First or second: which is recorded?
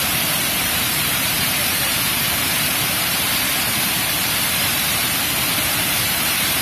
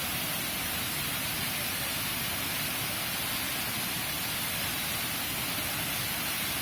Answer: second